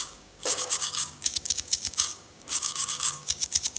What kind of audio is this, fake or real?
fake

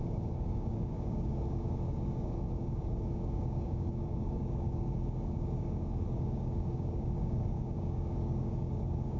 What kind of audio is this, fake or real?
fake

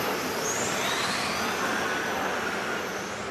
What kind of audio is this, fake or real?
real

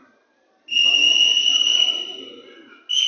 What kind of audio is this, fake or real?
real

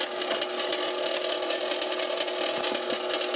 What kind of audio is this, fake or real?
real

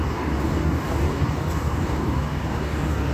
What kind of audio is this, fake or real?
fake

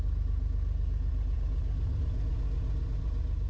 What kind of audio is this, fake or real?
real